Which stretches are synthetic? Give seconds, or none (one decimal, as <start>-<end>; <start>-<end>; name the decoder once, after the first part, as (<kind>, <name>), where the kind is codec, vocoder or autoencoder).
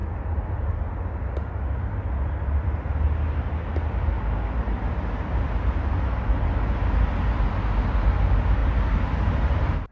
none